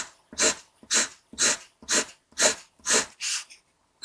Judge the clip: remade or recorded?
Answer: recorded